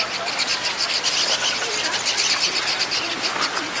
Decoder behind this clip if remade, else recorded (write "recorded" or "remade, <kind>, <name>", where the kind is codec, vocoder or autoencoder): recorded